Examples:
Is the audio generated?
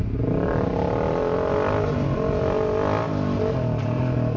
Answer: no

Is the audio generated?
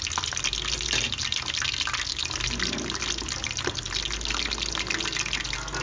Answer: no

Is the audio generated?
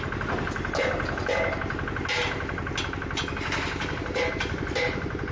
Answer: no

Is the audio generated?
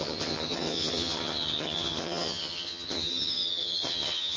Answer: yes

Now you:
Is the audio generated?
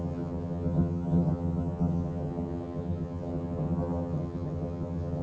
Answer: yes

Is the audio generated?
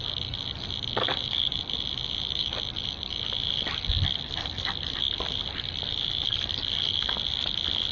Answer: no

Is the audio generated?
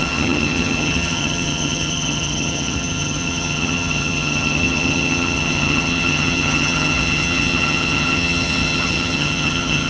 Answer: yes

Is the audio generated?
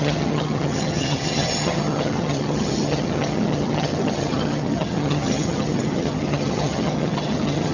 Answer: yes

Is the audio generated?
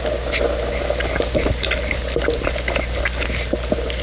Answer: no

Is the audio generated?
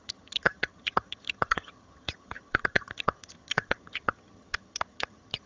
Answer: yes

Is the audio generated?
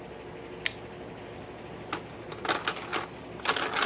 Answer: no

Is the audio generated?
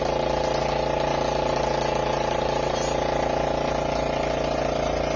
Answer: no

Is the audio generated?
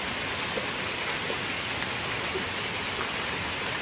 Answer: no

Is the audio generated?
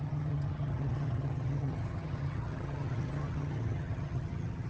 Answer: yes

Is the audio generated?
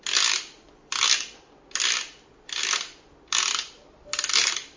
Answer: no